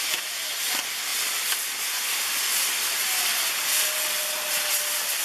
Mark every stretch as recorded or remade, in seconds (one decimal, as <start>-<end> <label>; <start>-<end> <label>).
0.0-5.2 recorded